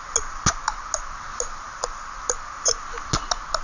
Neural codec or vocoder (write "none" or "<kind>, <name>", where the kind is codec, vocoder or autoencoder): none